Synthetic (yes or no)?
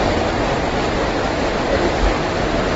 no